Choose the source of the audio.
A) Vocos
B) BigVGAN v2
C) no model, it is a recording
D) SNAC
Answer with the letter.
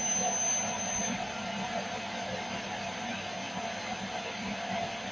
C